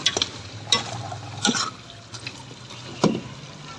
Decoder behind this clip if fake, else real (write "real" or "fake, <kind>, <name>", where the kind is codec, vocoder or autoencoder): real